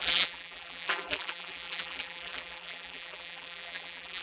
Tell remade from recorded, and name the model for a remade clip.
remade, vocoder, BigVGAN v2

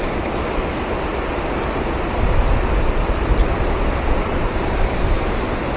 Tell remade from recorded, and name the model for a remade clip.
remade, vocoder, BigVGAN v2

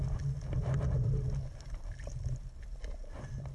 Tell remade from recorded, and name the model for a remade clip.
recorded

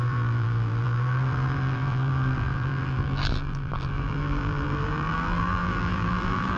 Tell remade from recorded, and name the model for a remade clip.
remade, vocoder, BigVGAN v2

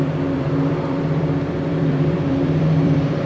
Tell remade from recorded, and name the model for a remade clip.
remade, vocoder, BigVGAN v2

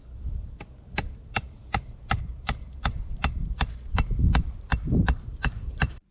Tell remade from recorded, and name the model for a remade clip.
remade, vocoder, BigVGAN v2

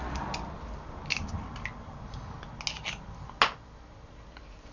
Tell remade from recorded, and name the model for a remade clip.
recorded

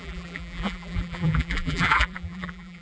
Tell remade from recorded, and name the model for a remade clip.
remade, vocoder, BigVGAN v2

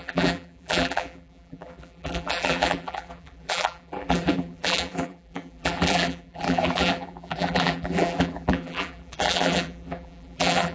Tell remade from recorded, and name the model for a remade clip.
remade, vocoder, BigVGAN v2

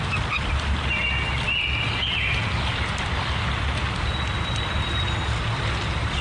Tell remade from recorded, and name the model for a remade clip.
recorded